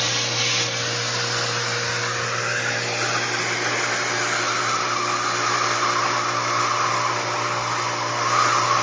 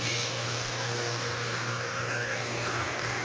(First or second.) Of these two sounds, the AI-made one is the second